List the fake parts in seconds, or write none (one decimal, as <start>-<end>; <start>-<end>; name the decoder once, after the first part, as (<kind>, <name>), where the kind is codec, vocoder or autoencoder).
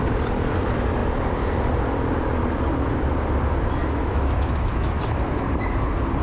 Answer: 3.8-5.0 (autoencoder, DAC-VAE)